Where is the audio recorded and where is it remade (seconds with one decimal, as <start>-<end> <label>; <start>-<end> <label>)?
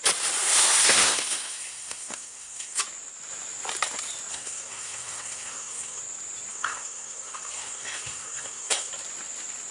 0.0-0.4 recorded; 0.4-2.8 remade; 2.8-4.3 recorded; 4.3-6.0 remade; 6.0-6.5 recorded; 6.5-8.9 remade; 8.9-9.7 recorded